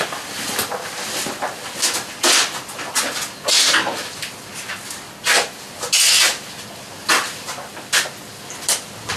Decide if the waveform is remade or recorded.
recorded